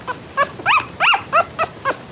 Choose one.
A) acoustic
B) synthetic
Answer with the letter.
A